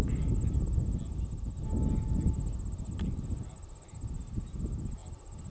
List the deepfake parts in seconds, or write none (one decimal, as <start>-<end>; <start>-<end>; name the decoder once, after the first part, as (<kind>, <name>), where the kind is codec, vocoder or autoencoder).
5.0-5.5 (vocoder, BigVGAN v2)